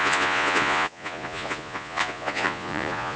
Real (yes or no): no